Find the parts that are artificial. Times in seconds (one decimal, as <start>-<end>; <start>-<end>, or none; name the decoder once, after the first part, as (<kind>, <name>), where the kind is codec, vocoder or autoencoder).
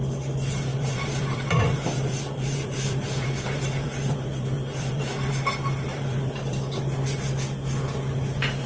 0.7-5.3 (vocoder, BigVGAN v2); 5.9-6.8